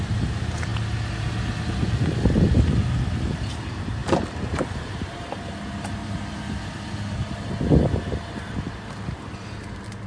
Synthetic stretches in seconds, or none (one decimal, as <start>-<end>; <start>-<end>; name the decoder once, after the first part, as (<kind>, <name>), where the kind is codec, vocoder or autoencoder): 0.0-0.7 (vocoder, BigVGAN v2); 3.2-6.0